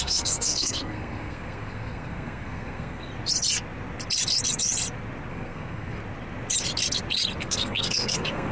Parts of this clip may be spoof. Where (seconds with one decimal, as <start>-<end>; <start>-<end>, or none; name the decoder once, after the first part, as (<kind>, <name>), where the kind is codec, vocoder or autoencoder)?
0.0-3.1 (codec, SNAC); 5.3-6.0; 7.4-8.5